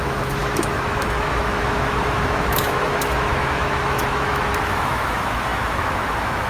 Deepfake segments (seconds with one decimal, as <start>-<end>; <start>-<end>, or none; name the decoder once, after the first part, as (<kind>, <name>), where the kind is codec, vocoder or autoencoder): 0.0-6.5 (autoencoder, DAC-VAE)